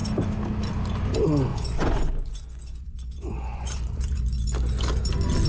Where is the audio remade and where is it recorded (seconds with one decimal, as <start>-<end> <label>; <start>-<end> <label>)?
0.0-1.5 recorded; 1.5-4.8 remade; 4.8-5.5 recorded